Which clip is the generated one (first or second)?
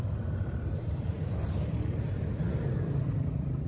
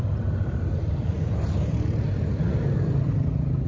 first